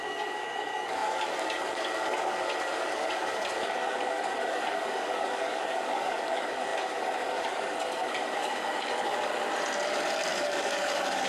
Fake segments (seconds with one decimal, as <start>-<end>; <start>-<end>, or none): 0.0-9.3; 10.3-11.3